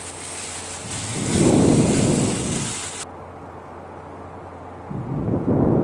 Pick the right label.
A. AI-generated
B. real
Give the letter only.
B